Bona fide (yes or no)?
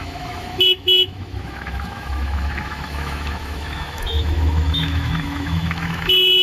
no